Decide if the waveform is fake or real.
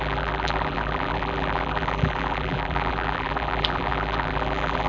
fake